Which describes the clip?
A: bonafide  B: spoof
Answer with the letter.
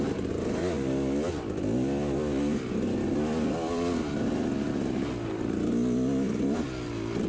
A